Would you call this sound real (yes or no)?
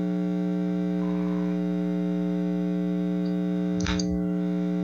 no